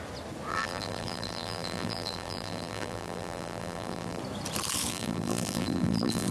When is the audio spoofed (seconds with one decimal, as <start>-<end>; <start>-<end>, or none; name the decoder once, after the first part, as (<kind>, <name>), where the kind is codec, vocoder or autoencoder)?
0.5-4.2 (vocoder, BigVGAN v2); 4.9-6.3